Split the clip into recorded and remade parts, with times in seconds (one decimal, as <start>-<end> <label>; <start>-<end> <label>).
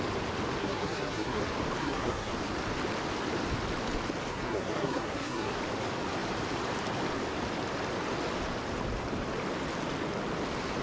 0.0-0.6 recorded; 0.6-1.4 remade; 1.4-1.8 recorded; 1.8-2.3 remade; 2.3-4.3 recorded; 4.3-5.6 remade; 5.6-10.8 recorded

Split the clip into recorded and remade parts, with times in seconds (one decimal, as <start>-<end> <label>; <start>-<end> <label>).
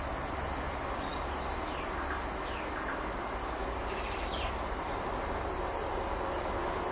0.0-6.9 recorded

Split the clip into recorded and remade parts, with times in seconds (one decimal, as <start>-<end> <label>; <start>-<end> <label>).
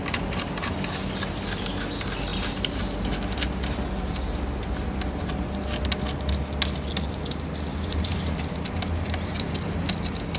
0.0-2.3 recorded; 2.3-2.8 remade; 2.8-7.7 recorded; 7.7-8.8 remade; 8.8-10.4 recorded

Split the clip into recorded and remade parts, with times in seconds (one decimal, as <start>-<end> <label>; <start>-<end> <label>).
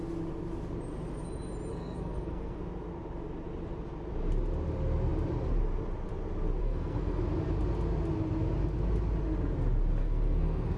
0.0-1.7 recorded; 1.7-2.6 remade; 2.6-6.6 recorded; 6.6-7.2 remade; 7.2-10.0 recorded; 10.0-10.8 remade